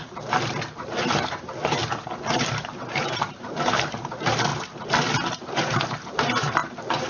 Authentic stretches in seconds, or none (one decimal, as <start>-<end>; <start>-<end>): 1.8-2.7; 4.5-5.5; 6.6-7.1